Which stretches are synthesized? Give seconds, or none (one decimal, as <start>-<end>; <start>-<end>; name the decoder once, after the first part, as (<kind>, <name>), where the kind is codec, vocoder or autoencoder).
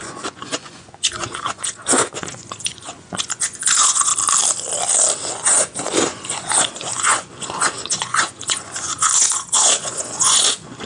0.0-4.1 (vocoder, Vocos); 5.3-10.9